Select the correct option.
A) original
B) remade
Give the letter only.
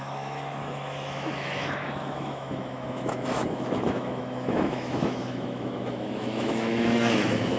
B